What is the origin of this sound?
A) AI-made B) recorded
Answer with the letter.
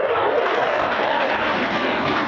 A